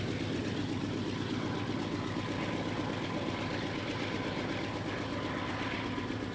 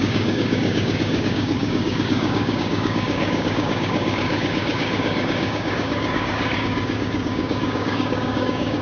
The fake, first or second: second